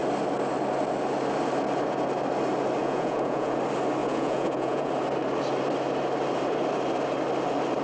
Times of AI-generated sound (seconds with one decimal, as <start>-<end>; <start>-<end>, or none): 2.8-3.6; 4.0-4.9